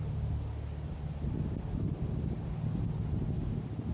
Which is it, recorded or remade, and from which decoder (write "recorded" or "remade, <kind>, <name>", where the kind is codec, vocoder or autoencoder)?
recorded